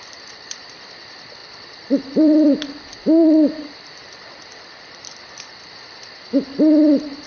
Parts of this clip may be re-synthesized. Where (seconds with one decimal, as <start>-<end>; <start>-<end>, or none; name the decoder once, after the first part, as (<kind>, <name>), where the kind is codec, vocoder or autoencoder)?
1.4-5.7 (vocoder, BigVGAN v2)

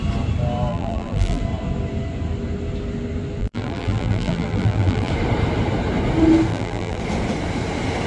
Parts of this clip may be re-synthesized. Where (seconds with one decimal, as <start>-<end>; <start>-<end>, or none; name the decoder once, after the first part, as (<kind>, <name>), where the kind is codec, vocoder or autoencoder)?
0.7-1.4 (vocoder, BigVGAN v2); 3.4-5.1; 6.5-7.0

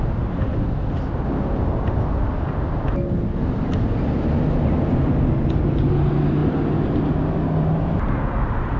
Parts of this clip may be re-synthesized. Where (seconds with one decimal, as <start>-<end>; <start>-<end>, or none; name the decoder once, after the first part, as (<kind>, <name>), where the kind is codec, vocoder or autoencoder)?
none